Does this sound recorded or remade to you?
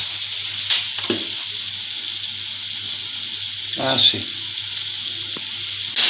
recorded